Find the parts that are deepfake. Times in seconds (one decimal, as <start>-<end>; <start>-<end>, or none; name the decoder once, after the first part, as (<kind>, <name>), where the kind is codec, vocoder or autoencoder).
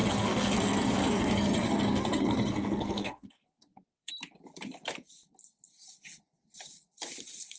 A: 0.0-4.1 (codec, SNAC)